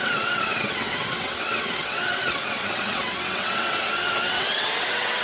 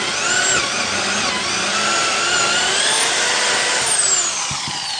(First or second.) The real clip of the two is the second